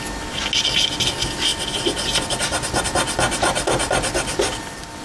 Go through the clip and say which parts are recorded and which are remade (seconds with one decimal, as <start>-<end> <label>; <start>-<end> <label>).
0.0-5.0 recorded